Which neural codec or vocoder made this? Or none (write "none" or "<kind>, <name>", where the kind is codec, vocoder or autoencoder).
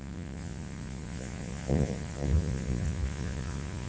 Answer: vocoder, Vocos